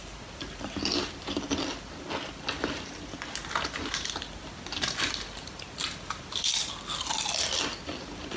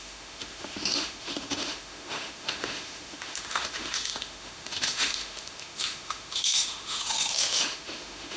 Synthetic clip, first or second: second